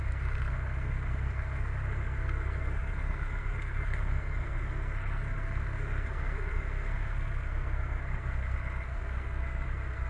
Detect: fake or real fake